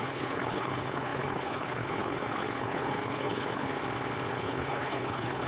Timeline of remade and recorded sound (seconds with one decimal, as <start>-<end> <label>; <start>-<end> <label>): 0.0-3.7 remade; 3.7-4.3 recorded; 4.3-5.5 remade